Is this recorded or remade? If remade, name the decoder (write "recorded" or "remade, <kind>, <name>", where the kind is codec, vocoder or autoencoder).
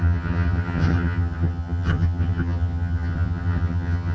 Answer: remade, vocoder, HiFi-GAN